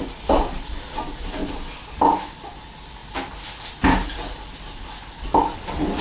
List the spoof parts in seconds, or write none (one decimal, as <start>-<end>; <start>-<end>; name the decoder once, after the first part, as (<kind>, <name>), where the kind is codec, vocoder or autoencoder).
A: 0.0-1.4 (vocoder, BigVGAN v2); 2.4-3.0; 3.9-6.0